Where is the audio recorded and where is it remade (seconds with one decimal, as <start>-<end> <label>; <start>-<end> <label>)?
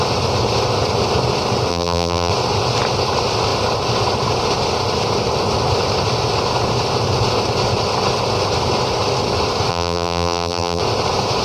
0.0-1.7 recorded; 1.7-2.3 remade; 2.3-9.7 recorded; 9.7-10.8 remade; 10.8-11.4 recorded